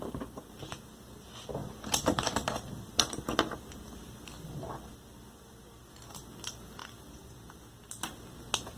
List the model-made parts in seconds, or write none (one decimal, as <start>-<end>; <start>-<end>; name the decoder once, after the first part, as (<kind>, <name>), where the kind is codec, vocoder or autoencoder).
1.6-5.9 (vocoder, BigVGAN v2); 6.8-7.7